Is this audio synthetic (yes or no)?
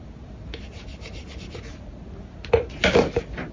no